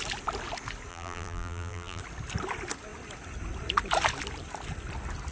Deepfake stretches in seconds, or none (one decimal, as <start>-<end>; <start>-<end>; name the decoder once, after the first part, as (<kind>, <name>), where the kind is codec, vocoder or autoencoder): 0.9-2.0 (vocoder, BigVGAN v2)